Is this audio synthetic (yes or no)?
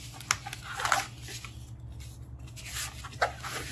no